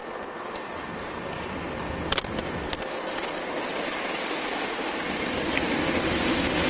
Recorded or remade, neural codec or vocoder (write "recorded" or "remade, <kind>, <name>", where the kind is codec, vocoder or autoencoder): recorded